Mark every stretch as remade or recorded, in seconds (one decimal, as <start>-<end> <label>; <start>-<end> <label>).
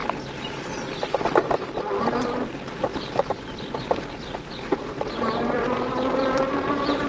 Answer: 0.0-2.9 recorded; 2.9-6.4 remade; 6.4-7.1 recorded